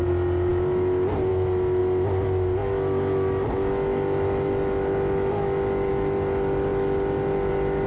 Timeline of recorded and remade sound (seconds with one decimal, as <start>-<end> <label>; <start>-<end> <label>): 0.0-7.9 recorded